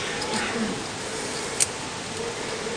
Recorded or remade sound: recorded